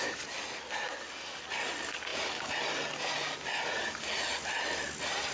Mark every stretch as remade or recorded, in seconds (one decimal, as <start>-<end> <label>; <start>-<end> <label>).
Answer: 0.0-5.3 recorded